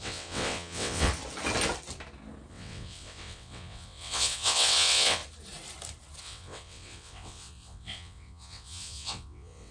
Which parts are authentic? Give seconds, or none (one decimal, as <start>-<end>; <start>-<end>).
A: 1.1-2.5; 5.2-6.2